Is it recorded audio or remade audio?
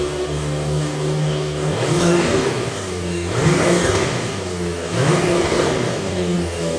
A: remade